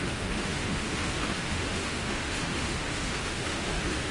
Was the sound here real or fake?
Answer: fake